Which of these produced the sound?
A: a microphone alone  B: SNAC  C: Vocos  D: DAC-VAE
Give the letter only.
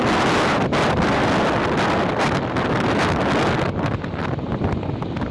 A